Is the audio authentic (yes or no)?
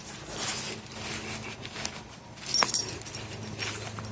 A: yes